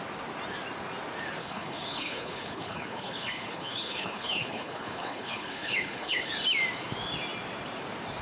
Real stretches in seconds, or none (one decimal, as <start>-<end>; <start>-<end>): 0.0-1.4; 6.3-8.2